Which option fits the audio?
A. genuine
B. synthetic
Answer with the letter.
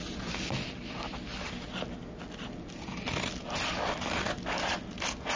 A